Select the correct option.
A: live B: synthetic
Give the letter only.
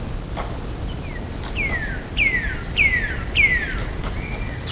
A